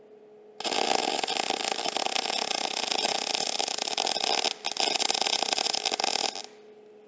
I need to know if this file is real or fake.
real